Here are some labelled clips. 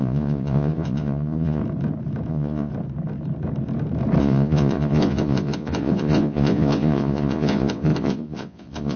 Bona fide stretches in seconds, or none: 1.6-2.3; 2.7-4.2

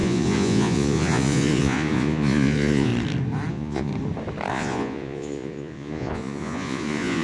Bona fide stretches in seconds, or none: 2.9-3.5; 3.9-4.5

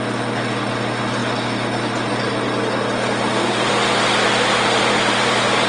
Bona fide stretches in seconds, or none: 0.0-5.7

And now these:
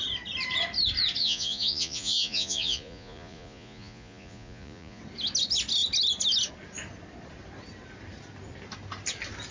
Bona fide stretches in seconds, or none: 0.0-1.2; 5.0-9.5

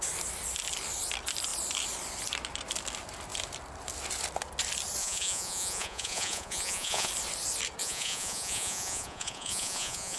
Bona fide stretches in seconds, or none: 0.0-5.0; 7.1-7.8